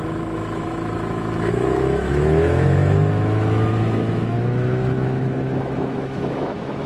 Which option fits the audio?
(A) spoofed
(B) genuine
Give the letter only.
A